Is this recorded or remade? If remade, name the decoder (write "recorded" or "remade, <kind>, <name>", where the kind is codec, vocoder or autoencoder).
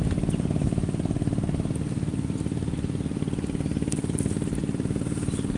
recorded